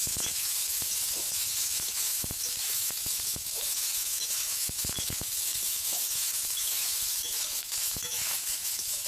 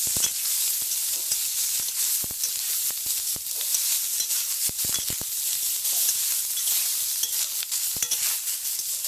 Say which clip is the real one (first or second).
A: second